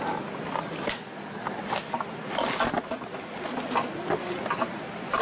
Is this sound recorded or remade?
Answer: recorded